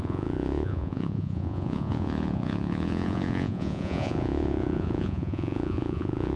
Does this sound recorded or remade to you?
remade